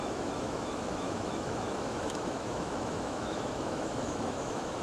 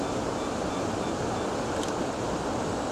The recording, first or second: second